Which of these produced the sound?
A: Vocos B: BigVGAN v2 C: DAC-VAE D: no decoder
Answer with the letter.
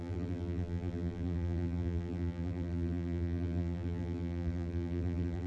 B